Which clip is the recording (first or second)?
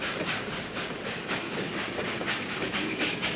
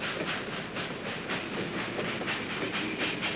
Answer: second